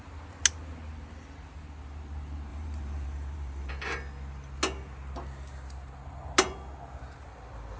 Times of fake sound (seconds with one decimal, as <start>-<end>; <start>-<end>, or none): 2.5-3.7